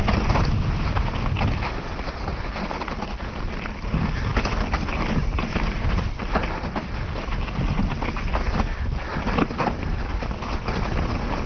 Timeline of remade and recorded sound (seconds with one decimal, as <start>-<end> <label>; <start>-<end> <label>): 0.0-11.5 recorded